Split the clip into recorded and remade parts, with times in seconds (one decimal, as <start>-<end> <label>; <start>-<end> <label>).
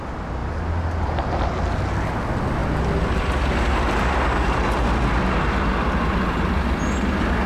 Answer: 0.0-7.5 recorded